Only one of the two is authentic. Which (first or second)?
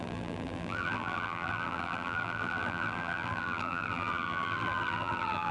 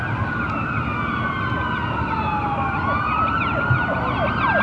second